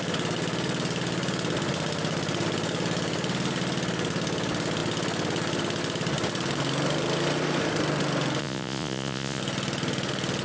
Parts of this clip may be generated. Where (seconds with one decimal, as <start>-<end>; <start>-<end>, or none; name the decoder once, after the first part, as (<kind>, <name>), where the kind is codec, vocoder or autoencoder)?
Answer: 8.4-9.4 (vocoder, Vocos)